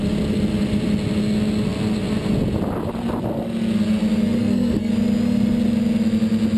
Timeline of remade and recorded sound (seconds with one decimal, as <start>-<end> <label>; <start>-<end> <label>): 0.0-4.4 recorded; 4.4-4.9 remade; 4.9-6.6 recorded